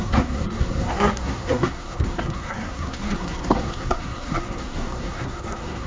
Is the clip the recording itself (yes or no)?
no